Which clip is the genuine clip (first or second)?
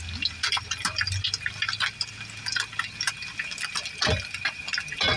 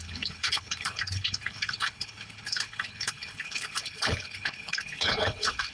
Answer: first